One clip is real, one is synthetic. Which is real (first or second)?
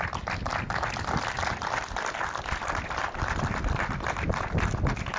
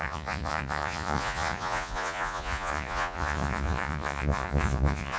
first